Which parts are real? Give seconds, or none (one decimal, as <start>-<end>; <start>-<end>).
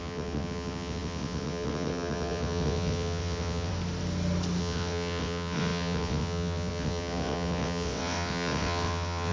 3.7-4.6